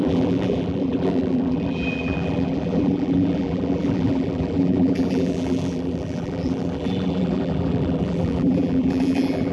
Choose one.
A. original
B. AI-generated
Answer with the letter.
B